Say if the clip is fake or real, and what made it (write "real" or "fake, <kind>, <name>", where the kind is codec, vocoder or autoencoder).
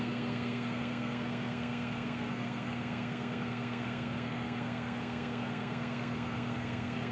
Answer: fake, codec, SNAC